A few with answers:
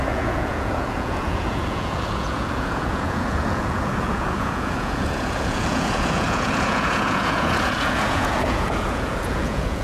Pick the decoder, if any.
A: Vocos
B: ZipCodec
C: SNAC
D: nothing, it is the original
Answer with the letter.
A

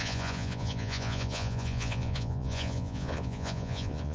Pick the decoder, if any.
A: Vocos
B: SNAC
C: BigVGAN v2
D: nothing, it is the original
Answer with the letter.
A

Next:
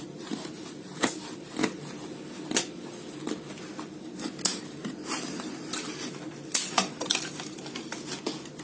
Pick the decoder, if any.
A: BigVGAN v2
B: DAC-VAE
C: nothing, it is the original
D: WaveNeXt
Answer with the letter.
C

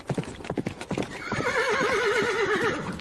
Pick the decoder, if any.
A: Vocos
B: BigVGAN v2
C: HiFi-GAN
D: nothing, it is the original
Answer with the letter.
B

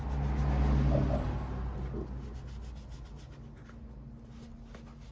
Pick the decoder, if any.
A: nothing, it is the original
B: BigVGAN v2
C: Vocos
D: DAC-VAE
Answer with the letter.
A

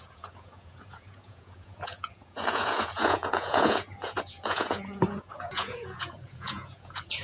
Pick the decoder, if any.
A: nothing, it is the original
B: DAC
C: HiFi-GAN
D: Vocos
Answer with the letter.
D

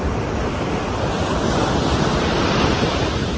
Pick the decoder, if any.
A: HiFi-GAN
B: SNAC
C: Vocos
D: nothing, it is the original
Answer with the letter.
D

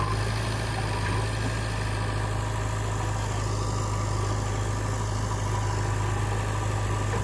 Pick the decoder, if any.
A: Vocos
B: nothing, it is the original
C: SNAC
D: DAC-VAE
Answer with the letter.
B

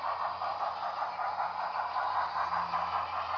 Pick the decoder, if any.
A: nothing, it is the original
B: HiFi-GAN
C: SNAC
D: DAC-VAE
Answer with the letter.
A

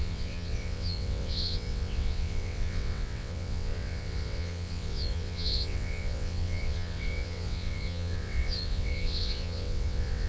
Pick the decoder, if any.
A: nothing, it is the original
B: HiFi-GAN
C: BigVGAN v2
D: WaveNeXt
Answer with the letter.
D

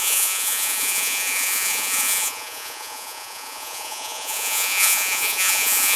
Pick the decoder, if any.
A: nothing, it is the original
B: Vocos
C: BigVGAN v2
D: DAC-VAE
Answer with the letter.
B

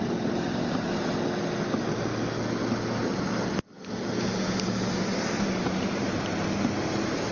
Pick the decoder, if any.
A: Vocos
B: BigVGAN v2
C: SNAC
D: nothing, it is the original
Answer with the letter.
D